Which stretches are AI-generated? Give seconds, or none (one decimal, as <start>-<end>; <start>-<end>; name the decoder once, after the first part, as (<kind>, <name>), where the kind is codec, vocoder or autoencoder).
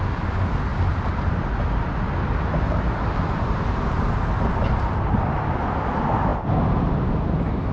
none